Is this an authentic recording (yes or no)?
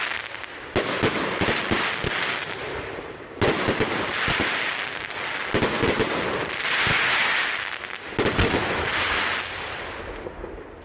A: yes